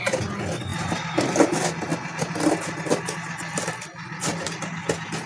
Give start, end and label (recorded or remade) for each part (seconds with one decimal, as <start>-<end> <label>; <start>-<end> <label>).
0.0-0.7 recorded; 0.7-1.4 remade; 1.4-5.3 recorded

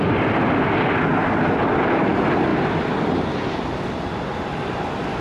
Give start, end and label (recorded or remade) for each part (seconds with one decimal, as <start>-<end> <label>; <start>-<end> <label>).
0.0-5.2 recorded

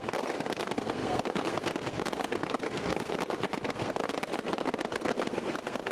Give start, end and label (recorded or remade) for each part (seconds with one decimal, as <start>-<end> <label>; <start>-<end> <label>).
0.0-4.0 remade; 4.0-4.6 recorded; 4.6-5.9 remade

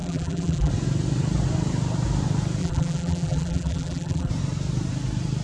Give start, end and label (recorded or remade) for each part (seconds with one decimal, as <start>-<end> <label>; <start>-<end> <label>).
0.0-0.7 remade; 0.7-2.6 recorded; 2.6-4.3 remade; 4.3-5.4 recorded